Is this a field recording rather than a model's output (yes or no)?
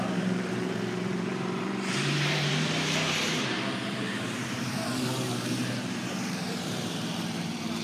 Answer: no